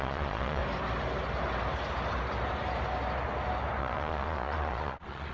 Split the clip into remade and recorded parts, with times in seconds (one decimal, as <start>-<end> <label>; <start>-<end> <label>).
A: 0.0-0.6 remade; 0.6-3.8 recorded; 3.8-5.3 remade